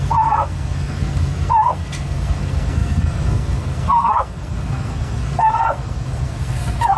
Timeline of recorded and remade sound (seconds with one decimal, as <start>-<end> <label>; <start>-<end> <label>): 0.0-7.0 remade